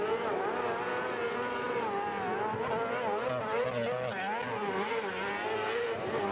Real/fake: real